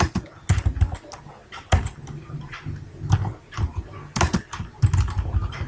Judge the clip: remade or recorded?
recorded